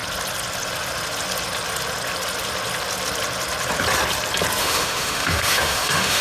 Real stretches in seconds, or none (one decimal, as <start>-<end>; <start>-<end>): 0.0-4.6